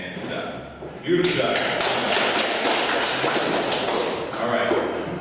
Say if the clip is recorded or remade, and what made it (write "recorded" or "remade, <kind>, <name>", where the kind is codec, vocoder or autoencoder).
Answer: recorded